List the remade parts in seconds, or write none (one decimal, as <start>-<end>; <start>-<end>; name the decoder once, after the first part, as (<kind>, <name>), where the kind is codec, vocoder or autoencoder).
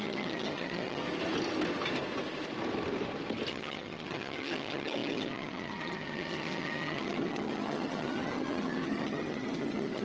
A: 0.0-1.0 (vocoder, HiFi-GAN); 3.5-10.0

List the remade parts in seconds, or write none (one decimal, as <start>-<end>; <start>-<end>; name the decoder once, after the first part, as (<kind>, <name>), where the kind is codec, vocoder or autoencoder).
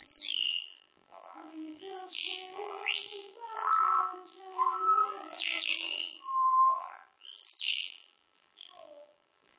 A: 0.0-9.6 (vocoder, BigVGAN v2)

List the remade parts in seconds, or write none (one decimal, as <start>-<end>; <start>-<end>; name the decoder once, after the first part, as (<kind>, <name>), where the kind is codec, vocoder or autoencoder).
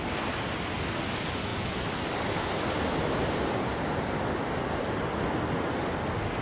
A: none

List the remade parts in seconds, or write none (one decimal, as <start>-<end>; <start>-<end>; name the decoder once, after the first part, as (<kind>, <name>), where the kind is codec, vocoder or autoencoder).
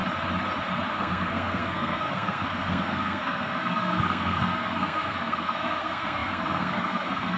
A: 0.9-7.4 (codec, SNAC)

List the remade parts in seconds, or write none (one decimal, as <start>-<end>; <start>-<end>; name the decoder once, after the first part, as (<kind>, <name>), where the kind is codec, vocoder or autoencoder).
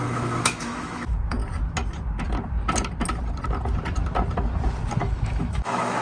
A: 0.0-1.4 (autoencoder, DAC-VAE); 5.0-6.0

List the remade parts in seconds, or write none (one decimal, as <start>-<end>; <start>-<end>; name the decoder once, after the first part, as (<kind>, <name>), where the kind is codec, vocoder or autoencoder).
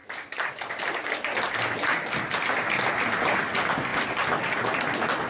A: none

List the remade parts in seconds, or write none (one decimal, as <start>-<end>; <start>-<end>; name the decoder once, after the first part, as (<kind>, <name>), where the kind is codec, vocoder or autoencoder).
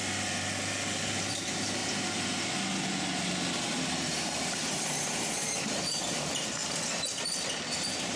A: 1.3-1.8 (vocoder, BigVGAN v2); 3.7-6.6; 7.2-8.2